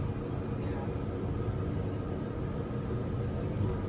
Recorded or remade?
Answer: remade